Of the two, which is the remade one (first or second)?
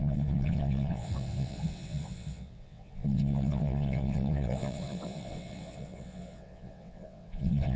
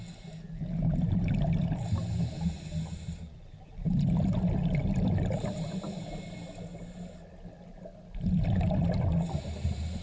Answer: first